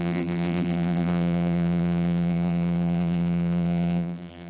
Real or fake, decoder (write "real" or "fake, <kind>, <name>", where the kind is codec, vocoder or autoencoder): fake, vocoder, BigVGAN v2